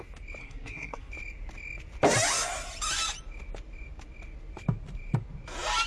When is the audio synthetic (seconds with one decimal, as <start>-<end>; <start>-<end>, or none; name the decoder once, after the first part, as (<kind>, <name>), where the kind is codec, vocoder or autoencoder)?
0.4-1.1 (codec, SNAC)